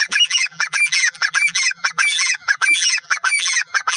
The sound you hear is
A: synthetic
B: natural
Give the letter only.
A